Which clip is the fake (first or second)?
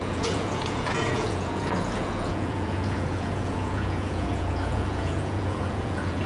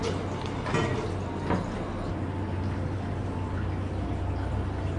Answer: first